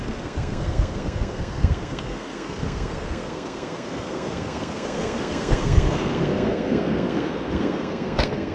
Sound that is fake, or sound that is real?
fake